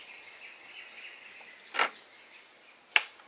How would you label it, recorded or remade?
recorded